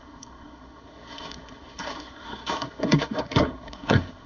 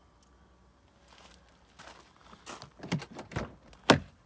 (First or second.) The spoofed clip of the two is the first